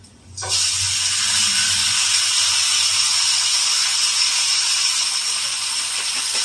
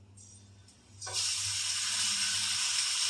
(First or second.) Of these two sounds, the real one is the second